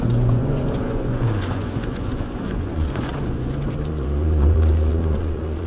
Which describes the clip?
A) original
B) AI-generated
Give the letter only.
B